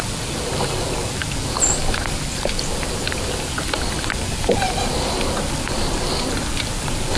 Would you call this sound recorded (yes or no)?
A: yes